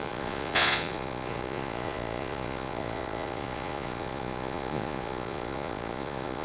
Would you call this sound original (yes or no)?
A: no